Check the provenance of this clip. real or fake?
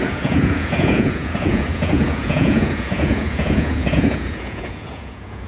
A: fake